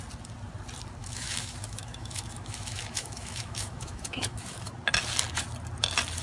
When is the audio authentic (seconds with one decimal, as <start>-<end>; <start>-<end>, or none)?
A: 0.0-1.0; 4.7-6.2